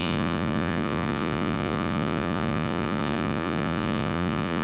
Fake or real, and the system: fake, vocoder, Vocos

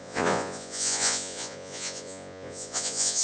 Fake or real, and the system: fake, vocoder, Vocos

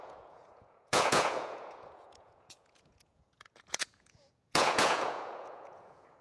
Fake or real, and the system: fake, vocoder, Vocos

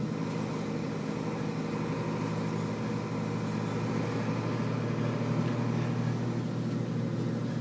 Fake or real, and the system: real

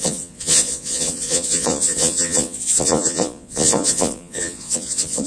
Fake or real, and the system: fake, vocoder, Vocos